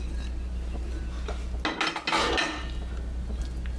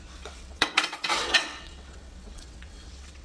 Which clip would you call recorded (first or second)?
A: first